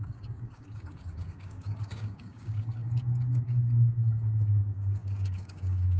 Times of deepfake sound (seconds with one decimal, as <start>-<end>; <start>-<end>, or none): 0.0-6.0

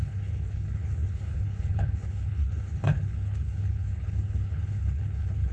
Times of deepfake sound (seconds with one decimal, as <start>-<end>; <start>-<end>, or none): 0.0-5.5

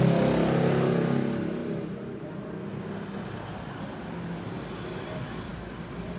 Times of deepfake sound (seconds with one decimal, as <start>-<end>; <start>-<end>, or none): 3.5-4.2

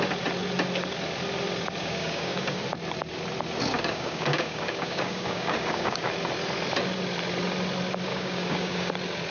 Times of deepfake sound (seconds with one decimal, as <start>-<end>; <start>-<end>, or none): 1.8-2.6; 3.7-6.1; 8.1-8.9

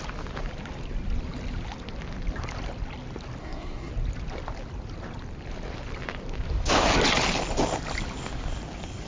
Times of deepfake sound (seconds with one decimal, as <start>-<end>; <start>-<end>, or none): 3.4-3.9

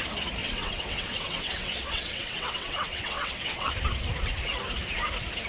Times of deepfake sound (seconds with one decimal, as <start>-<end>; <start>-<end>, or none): 0.4-3.7

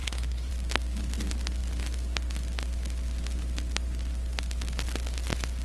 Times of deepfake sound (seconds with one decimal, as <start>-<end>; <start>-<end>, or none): 0.0-0.5